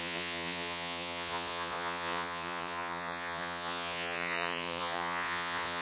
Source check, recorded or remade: remade